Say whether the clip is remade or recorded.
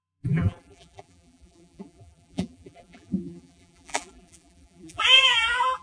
remade